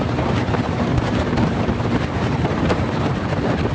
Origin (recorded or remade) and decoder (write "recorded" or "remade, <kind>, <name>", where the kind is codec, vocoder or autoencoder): remade, vocoder, BigVGAN v2